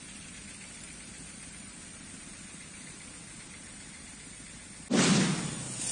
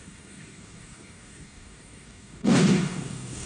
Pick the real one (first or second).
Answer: first